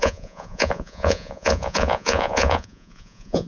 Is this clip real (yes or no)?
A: no